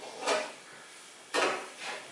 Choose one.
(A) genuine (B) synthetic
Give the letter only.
A